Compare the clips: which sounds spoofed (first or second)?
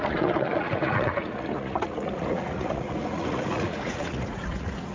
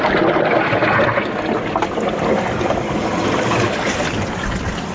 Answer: first